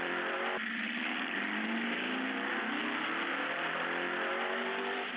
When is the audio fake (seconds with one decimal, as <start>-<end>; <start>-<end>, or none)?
0.0-2.8; 3.5-5.2